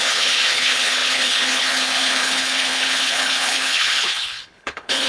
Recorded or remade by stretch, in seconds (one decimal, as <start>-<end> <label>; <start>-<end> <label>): 0.0-5.1 remade